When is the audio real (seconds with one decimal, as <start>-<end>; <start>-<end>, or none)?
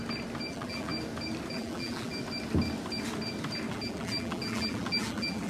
0.0-0.5; 0.9-1.5; 2.1-3.7